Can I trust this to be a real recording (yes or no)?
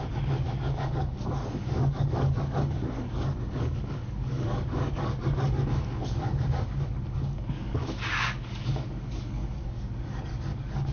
no